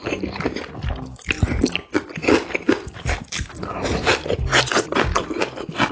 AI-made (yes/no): no